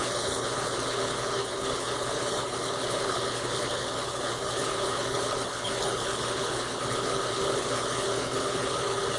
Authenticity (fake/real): fake